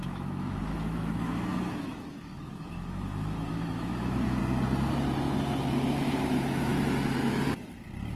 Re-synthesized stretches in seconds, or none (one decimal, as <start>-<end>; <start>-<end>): 0.0-4.4; 5.6-6.7